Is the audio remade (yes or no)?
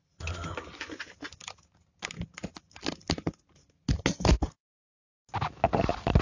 no